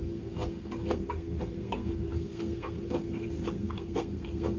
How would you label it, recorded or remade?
remade